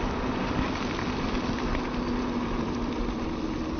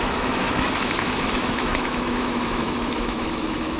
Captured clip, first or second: first